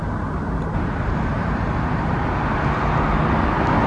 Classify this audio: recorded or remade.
recorded